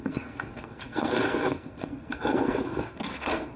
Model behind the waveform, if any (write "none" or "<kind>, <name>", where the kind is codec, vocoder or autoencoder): codec, SNAC